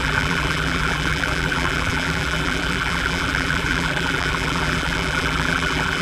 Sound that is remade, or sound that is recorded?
remade